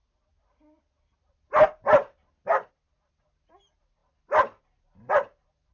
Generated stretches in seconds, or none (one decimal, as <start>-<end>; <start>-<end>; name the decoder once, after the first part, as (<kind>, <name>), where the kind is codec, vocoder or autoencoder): none